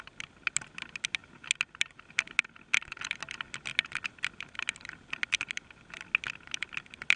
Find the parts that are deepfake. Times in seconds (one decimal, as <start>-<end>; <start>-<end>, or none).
none

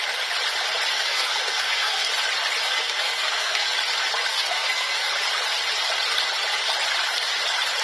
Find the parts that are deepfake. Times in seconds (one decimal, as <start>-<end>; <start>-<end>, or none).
0.9-2.1; 2.6-3.7; 4.3-5.1

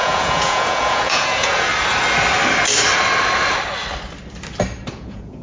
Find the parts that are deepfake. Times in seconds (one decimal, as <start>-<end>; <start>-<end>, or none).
0.0-1.7; 4.9-5.4

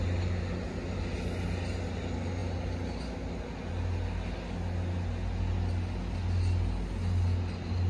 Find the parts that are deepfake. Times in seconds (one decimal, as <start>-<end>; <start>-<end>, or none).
none

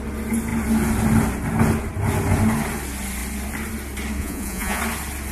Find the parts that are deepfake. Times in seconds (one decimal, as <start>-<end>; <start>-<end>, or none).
4.2-4.8